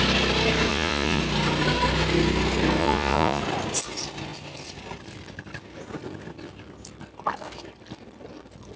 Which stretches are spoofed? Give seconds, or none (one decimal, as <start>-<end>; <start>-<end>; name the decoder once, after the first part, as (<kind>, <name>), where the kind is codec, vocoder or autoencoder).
0.7-1.2 (vocoder, Vocos); 2.8-3.4